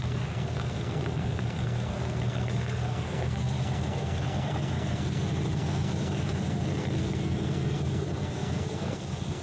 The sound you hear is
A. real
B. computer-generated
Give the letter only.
B